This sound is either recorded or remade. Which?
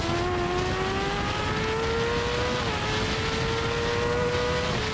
recorded